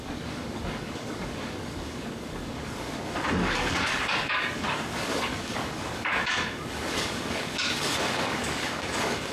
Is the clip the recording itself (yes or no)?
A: no